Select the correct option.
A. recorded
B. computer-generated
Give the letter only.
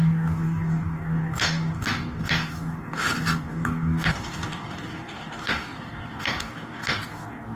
B